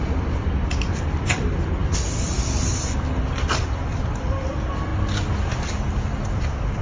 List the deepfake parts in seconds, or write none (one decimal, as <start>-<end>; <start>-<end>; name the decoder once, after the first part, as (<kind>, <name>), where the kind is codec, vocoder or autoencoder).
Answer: 0.0-1.8 (vocoder, BigVGAN v2); 3.8-4.9